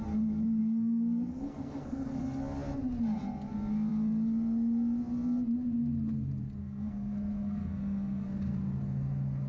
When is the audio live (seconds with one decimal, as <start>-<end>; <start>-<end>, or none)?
0.0-0.6; 2.2-6.6; 8.6-9.5